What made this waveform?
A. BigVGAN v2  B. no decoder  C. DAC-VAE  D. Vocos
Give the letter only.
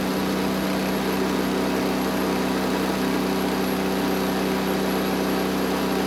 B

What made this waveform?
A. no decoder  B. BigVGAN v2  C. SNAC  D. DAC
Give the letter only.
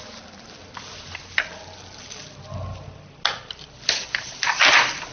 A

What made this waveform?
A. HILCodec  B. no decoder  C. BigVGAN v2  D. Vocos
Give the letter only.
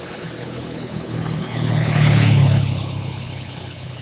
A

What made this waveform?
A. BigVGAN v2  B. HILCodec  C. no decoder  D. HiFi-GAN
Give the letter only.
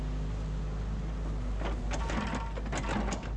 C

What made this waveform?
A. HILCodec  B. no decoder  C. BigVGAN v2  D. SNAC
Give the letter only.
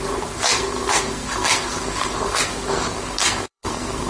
D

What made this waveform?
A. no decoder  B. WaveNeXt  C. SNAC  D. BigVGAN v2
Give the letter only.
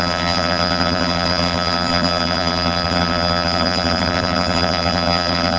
D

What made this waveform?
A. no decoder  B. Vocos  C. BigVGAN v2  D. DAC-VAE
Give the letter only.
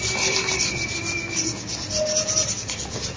A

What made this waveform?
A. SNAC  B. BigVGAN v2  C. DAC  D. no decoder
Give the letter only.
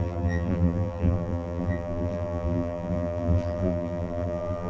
B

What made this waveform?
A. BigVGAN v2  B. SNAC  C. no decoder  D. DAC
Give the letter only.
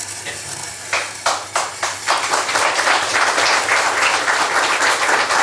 C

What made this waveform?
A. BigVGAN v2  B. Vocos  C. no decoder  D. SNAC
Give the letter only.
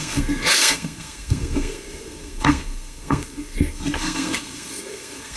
D